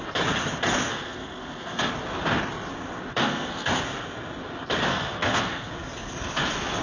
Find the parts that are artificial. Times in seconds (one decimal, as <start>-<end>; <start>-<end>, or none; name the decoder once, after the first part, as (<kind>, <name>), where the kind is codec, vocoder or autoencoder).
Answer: 0.9-1.9 (codec, SNAC); 3.2-3.7; 4.9-5.7